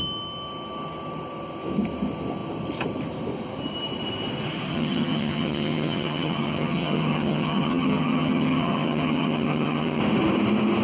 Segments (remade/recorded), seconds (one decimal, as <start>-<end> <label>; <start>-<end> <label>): 0.0-4.7 recorded; 4.7-10.0 remade; 10.0-10.8 recorded